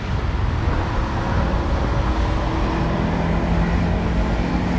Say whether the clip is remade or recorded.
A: recorded